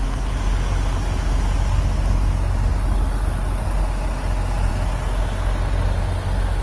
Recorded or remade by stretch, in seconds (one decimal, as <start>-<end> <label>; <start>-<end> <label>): 0.0-6.6 recorded

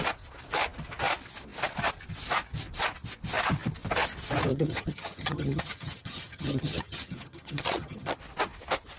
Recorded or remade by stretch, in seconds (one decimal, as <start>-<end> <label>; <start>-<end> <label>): 0.0-4.5 recorded; 4.5-8.2 remade; 8.2-9.0 recorded

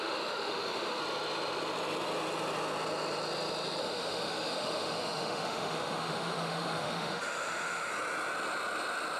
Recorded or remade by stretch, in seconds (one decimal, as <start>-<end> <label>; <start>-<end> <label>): 0.0-1.0 remade; 1.0-3.8 recorded; 3.8-7.9 remade; 7.9-9.2 recorded

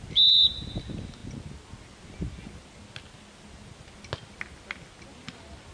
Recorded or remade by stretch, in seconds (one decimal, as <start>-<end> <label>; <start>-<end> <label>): 0.0-5.7 recorded

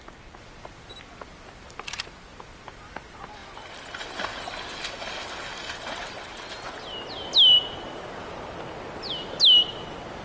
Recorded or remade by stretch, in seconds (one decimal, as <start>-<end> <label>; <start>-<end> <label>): 0.0-10.2 recorded